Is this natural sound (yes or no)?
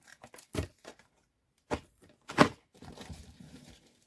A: no